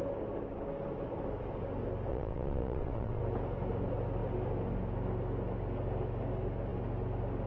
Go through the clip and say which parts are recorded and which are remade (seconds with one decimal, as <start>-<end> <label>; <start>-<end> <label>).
0.0-2.1 recorded; 2.1-3.2 remade; 3.2-7.5 recorded